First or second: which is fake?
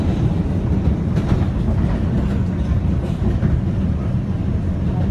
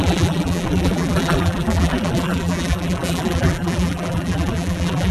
second